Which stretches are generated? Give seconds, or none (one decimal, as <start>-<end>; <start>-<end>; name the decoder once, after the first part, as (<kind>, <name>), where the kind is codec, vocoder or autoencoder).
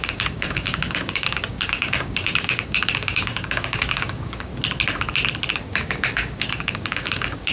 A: 0.0-4.5 (codec, DAC); 5.5-7.5